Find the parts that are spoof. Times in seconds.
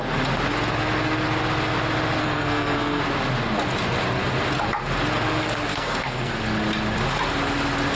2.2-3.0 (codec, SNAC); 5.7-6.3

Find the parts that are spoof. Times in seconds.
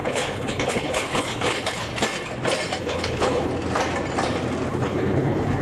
0.0-1.9 (codec, HILCodec); 2.8-3.5; 4.7-5.6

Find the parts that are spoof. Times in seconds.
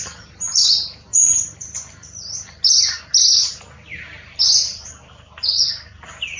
none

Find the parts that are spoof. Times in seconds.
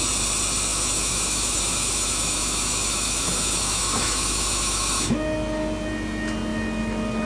0.7-5.1 (autoencoder, DAC-VAE)